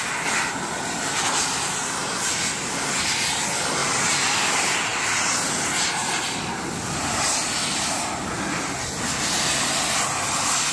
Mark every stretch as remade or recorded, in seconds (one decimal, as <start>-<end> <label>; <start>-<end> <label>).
0.0-10.7 recorded